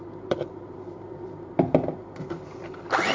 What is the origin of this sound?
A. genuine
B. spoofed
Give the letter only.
B